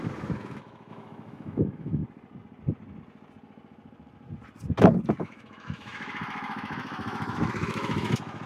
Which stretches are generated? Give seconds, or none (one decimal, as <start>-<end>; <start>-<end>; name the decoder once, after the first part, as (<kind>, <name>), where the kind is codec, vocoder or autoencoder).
0.0-2.0 (autoencoder, DAC-VAE); 5.2-8.5

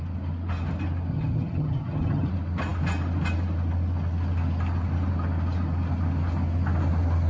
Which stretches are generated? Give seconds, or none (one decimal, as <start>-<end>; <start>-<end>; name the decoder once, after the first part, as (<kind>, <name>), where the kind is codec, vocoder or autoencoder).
1.1-2.3 (vocoder, HiFi-GAN)

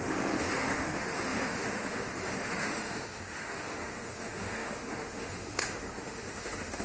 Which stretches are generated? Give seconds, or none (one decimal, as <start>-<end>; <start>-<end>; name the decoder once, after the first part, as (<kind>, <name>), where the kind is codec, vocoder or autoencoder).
0.0-6.8 (autoencoder, DAC-VAE)